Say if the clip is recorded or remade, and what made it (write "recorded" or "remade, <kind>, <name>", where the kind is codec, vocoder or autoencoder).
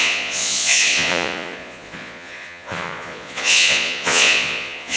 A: remade, vocoder, Vocos